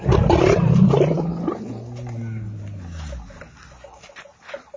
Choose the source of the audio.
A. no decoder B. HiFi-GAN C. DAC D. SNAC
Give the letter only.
A